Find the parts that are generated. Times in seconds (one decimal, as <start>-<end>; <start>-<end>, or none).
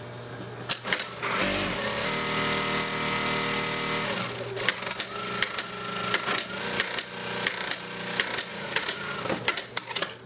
8.5-9.2